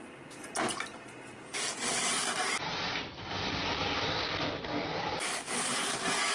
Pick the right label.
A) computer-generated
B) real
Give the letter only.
B